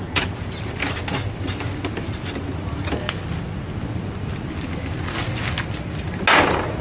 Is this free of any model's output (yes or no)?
yes